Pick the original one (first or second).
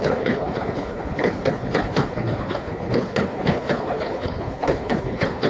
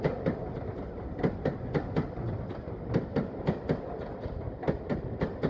second